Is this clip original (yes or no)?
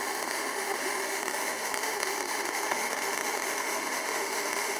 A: no